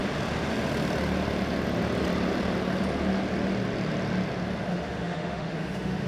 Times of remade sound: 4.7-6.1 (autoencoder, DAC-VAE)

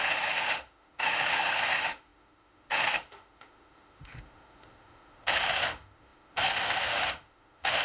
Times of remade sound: 0.0-7.8 (autoencoder, DAC-VAE)

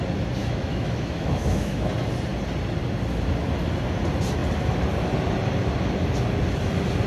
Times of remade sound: 0.4-1.9 (autoencoder, DAC-VAE)

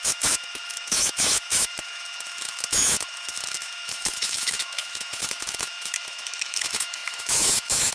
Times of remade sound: 0.0-7.9 (autoencoder, DAC-VAE)

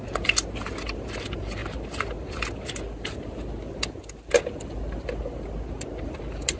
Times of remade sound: none